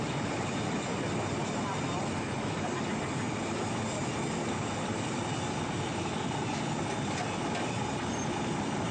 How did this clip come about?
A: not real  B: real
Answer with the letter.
B